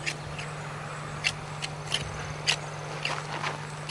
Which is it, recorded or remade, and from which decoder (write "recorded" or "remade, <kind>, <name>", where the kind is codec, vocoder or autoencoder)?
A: recorded